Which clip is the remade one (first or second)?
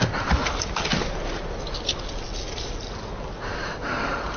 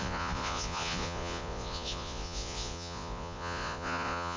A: second